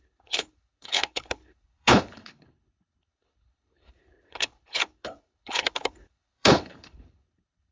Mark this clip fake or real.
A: fake